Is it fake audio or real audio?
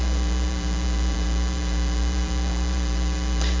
fake